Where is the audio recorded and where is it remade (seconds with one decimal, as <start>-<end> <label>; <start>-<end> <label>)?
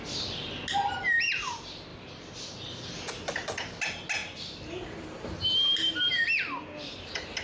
0.0-7.4 recorded